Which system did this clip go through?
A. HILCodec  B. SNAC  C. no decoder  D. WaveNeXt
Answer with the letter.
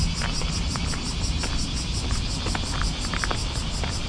C